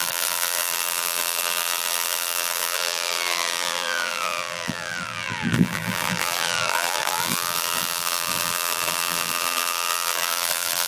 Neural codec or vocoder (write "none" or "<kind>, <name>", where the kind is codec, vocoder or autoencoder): vocoder, BigVGAN v2